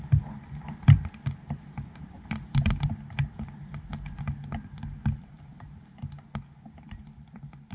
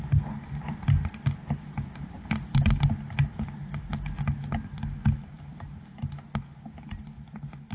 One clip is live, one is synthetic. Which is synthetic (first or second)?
first